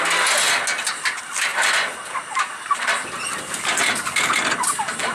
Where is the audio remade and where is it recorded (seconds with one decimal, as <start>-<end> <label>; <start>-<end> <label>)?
0.0-5.1 recorded